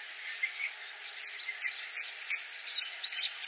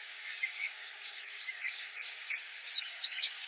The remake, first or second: second